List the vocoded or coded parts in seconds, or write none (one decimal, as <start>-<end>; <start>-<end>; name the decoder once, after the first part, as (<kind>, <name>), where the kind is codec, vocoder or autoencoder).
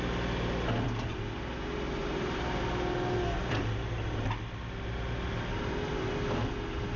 2.0-2.6 (vocoder, BigVGAN v2)